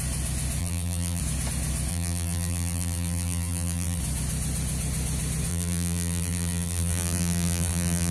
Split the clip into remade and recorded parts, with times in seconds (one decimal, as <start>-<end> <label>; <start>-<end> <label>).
0.0-0.6 recorded; 0.6-1.2 remade; 1.2-1.9 recorded; 1.9-4.0 remade; 4.0-5.5 recorded; 5.5-8.1 remade